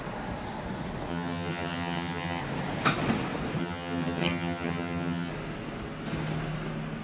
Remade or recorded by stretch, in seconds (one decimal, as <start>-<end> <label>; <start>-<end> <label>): 0.0-1.1 recorded; 1.1-2.4 remade; 2.4-3.6 recorded; 3.6-5.3 remade; 5.3-7.0 recorded